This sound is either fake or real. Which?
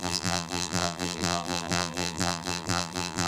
fake